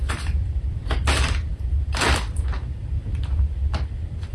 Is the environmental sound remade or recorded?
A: remade